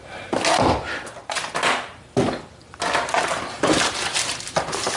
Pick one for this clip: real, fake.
real